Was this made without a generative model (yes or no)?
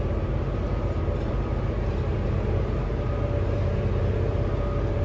yes